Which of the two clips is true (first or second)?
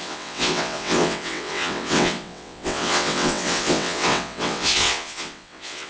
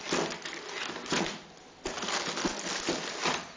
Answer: second